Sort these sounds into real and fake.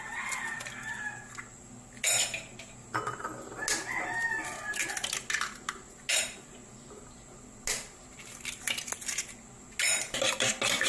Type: real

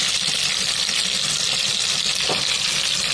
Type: real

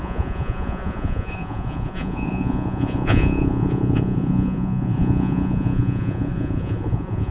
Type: fake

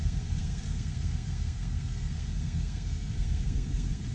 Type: fake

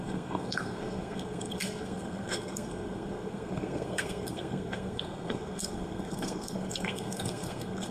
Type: fake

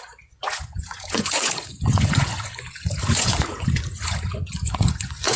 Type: fake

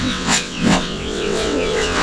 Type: fake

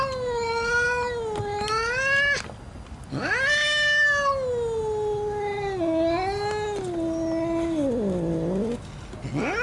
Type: real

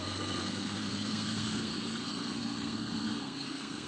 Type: fake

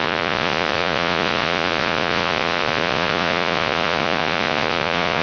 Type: fake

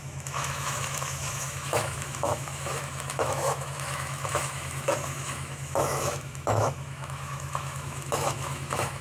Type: fake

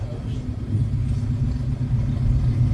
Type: real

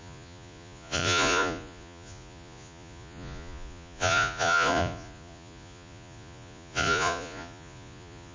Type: fake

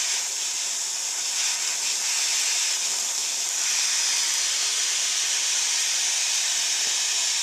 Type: real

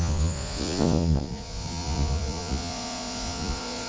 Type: fake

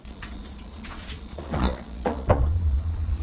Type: fake